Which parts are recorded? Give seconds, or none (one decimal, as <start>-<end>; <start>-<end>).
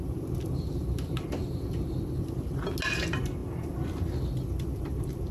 0.0-5.3